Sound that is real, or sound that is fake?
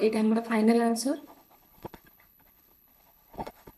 fake